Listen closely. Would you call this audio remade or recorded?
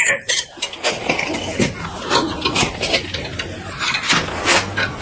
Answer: recorded